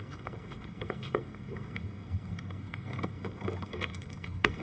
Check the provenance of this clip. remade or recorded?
remade